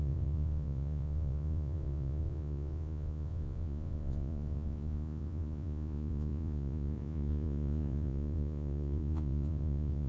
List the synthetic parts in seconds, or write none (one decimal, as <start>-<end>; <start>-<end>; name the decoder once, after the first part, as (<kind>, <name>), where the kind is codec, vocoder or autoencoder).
0.0-10.1 (vocoder, Vocos)